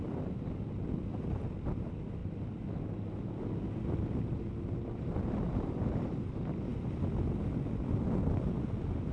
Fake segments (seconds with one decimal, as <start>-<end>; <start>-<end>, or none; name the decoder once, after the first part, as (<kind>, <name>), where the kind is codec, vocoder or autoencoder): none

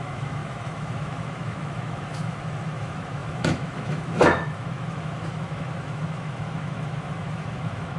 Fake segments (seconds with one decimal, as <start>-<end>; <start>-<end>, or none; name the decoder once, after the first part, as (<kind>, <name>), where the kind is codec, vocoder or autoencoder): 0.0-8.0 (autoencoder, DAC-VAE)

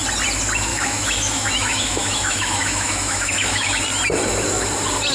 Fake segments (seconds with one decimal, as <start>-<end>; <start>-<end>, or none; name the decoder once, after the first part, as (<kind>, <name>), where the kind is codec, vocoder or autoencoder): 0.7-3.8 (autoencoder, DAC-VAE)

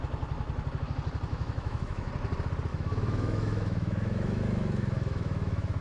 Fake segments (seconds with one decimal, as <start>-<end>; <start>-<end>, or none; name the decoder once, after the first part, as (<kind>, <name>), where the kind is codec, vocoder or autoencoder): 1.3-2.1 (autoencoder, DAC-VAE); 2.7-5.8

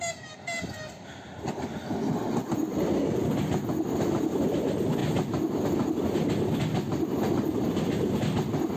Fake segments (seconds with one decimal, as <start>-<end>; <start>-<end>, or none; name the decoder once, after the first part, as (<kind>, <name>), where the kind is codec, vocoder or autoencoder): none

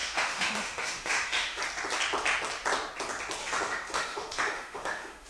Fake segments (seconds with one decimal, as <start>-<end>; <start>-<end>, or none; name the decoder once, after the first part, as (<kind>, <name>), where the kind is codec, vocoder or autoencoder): 0.0-1.6 (autoencoder, DAC-VAE); 3.4-5.3